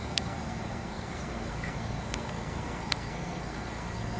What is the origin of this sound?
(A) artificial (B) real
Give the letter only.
A